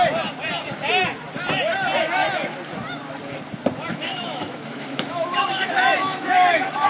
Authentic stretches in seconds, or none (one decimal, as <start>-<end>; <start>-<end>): 0.0-3.9